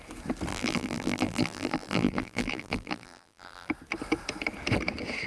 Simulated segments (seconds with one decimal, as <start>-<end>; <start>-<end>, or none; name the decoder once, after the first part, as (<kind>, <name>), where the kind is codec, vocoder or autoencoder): 0.5-3.7 (vocoder, BigVGAN v2)